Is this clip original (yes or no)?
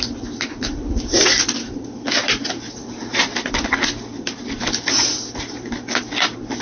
yes